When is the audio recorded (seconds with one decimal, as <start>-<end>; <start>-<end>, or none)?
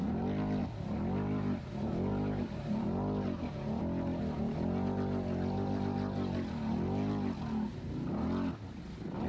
0.0-9.3